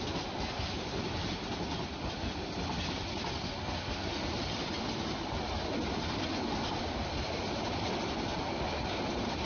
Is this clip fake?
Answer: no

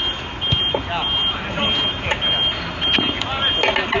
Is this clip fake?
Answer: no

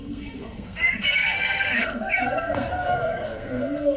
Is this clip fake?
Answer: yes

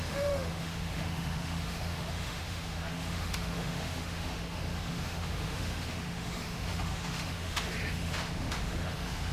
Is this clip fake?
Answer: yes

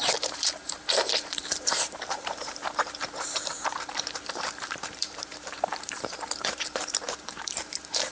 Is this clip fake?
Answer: yes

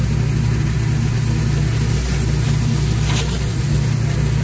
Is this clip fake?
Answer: no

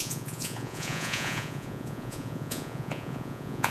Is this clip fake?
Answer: yes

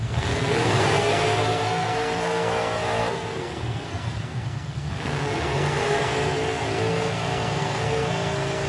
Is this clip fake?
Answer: yes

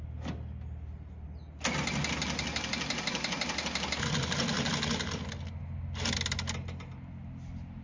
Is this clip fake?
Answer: no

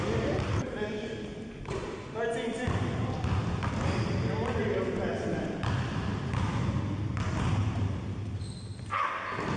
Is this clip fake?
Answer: no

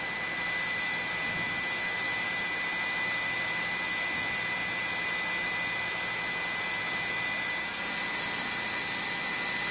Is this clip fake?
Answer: no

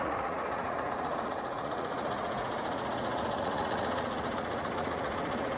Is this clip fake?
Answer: yes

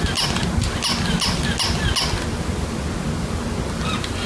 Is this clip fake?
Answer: no